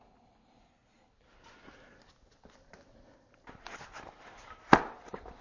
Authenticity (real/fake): real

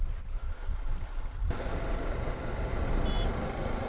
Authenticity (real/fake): real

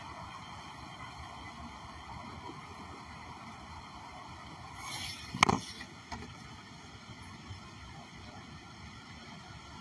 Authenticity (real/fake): real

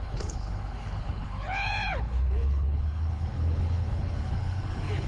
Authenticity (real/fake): fake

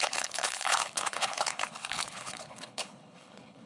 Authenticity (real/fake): fake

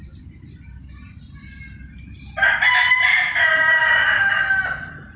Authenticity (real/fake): real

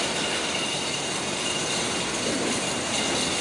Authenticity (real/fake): real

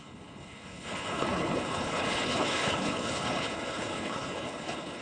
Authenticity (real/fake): fake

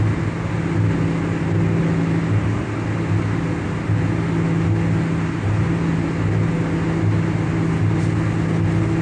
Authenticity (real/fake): real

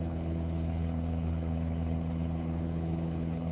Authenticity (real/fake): fake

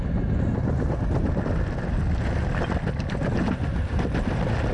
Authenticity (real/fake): real